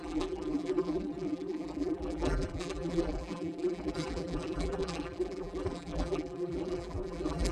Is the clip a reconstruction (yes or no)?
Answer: yes